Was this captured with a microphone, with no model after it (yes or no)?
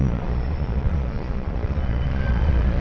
no